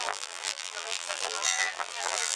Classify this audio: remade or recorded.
remade